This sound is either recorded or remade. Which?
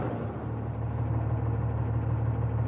recorded